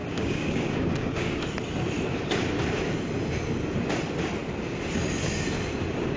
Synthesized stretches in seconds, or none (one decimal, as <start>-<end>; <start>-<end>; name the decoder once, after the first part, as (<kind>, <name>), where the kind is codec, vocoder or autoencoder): 0.0-1.4 (codec, DAC)

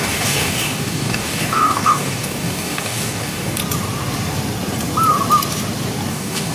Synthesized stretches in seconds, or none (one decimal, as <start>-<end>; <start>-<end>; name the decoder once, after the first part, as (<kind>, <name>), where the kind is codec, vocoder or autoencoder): 0.0-3.6 (codec, DAC); 6.1-6.5

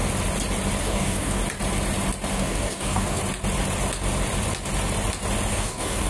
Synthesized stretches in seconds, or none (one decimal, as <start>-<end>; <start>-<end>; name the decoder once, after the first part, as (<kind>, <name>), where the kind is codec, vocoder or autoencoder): 0.8-1.4 (codec, DAC); 2.3-3.2; 5.5-6.1